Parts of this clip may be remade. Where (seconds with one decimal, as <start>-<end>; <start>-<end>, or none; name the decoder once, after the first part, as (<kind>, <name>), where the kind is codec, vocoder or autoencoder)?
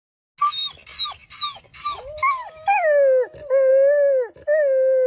none